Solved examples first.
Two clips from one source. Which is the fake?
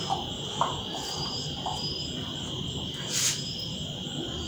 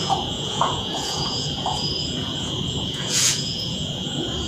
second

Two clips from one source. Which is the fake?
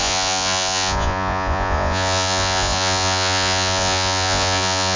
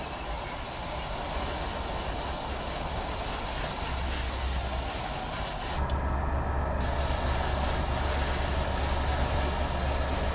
first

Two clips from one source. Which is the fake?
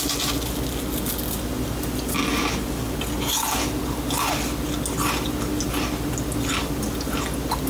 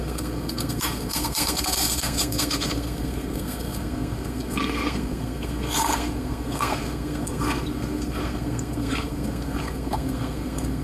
second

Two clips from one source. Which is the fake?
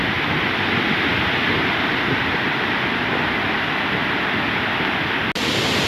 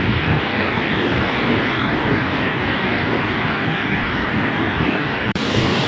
second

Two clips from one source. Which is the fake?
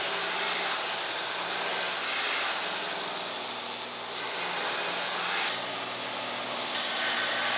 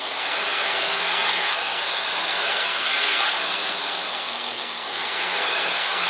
second